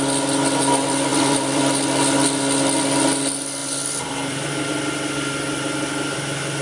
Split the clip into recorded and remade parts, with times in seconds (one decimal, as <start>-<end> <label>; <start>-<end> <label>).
0.0-1.1 recorded; 1.1-1.6 remade; 1.6-3.6 recorded; 3.6-4.7 remade; 4.7-6.6 recorded